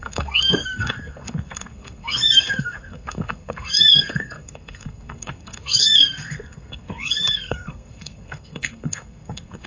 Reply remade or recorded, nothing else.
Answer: remade